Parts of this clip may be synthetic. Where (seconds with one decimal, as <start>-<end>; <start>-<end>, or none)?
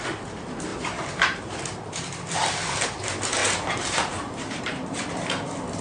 0.7-1.6; 3.4-5.0